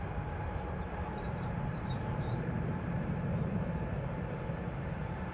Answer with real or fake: fake